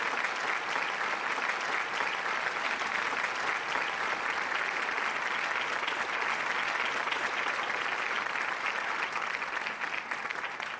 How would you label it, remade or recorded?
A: recorded